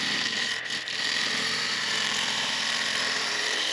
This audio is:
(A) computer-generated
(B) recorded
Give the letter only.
A